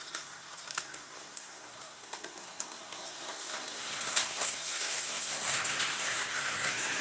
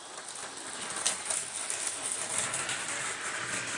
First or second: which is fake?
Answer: first